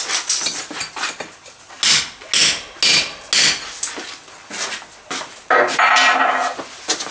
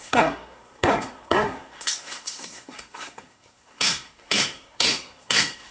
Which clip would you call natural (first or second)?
first